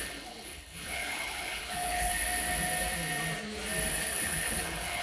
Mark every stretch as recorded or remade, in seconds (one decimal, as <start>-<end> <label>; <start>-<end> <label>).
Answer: 0.0-2.1 remade; 2.1-3.9 recorded; 3.9-5.0 remade